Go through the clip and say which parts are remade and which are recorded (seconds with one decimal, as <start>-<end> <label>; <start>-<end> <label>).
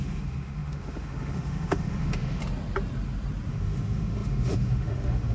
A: 0.0-2.4 remade; 2.4-3.5 recorded; 3.5-5.3 remade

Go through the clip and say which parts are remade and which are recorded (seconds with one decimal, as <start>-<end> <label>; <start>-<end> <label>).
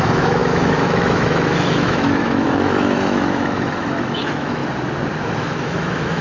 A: 0.0-4.6 remade; 4.6-5.4 recorded; 5.4-6.2 remade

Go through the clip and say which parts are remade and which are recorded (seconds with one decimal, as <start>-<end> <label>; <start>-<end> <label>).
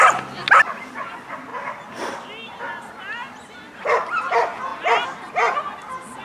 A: 0.0-6.2 recorded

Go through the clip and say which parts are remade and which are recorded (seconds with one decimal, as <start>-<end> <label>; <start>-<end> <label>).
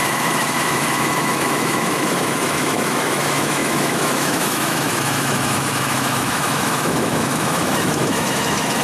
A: 0.0-8.8 remade